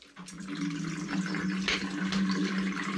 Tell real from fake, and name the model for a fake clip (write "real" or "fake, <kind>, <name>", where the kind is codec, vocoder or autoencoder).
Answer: real